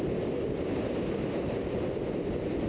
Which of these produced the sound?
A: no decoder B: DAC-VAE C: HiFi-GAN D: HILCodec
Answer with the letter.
A